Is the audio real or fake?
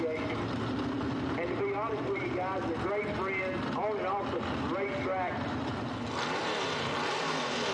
real